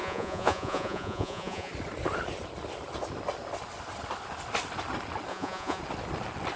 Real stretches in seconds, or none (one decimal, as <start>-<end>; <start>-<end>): 1.7-5.3; 5.8-6.6